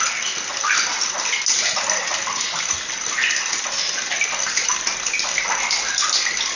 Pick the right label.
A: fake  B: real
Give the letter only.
B